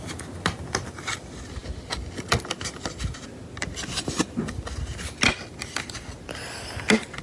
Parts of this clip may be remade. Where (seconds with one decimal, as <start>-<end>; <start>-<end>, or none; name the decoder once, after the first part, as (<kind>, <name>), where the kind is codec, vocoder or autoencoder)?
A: none